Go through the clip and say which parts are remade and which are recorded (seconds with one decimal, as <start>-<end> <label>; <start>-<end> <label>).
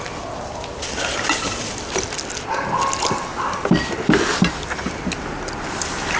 0.0-6.2 recorded